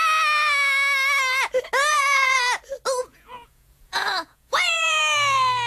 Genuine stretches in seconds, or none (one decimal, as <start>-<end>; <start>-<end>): 0.0-1.8; 2.4-3.0; 5.0-5.7